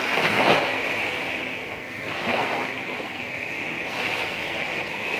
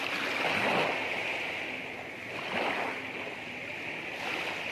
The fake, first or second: first